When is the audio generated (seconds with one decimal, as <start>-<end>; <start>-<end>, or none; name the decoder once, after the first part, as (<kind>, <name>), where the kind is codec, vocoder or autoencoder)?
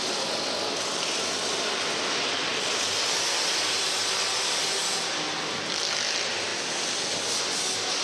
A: none